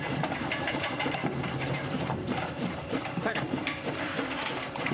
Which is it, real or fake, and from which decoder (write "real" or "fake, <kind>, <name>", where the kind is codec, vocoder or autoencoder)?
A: fake, vocoder, BigVGAN v2